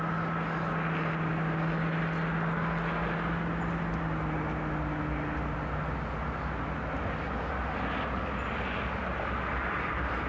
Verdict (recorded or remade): recorded